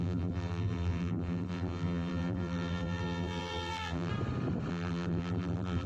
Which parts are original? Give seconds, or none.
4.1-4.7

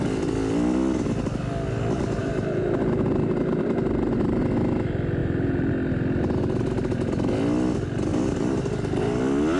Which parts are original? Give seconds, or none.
0.0-2.2; 4.4-5.2; 5.7-8.1; 9.2-9.6

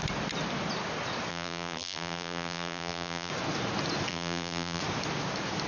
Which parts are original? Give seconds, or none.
0.0-1.3; 3.3-4.1; 4.8-5.7

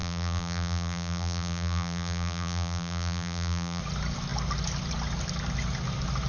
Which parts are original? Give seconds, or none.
3.8-6.3

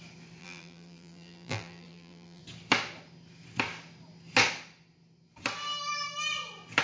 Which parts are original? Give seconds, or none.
0.0-0.4; 2.4-6.8

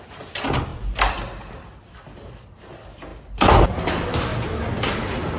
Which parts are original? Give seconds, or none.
0.0-5.4